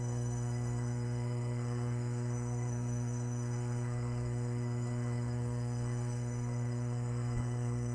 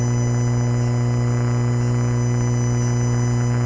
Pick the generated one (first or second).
first